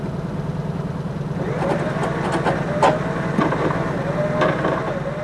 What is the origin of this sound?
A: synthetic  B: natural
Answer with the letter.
B